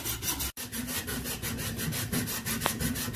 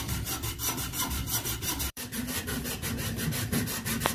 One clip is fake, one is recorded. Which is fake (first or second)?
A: second